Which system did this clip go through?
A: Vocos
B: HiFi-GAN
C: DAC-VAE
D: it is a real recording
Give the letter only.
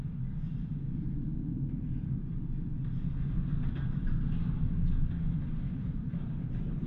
D